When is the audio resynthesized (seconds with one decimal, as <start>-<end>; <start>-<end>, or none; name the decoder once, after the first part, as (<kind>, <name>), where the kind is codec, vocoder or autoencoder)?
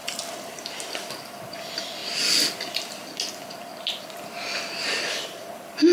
none